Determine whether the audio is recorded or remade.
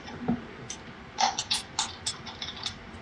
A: recorded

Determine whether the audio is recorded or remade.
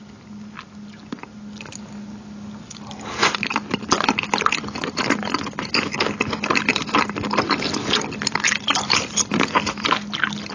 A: recorded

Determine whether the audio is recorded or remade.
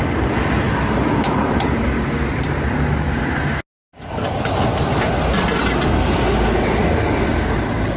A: recorded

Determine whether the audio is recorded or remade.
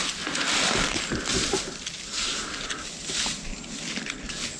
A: recorded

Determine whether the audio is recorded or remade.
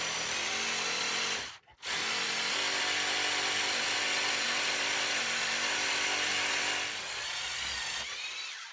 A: recorded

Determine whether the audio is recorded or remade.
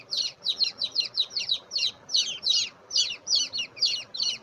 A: remade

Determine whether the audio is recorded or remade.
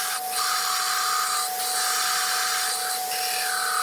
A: recorded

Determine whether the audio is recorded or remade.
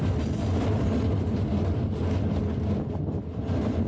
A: recorded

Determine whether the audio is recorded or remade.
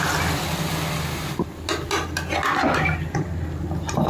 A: recorded